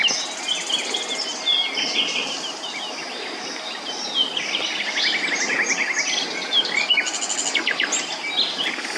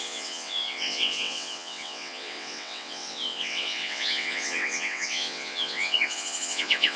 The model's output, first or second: second